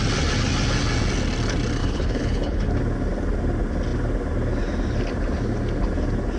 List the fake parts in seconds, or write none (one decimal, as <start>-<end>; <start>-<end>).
1.8-2.7